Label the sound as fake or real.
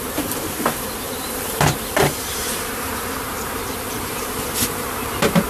fake